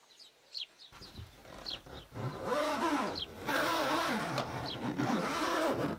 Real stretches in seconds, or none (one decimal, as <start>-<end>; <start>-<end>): none